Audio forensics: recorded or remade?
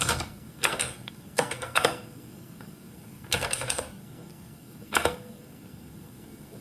remade